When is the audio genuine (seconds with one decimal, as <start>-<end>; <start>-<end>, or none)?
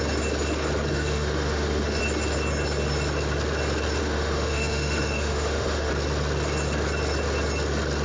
0.0-0.9; 2.0-4.0; 5.9-8.0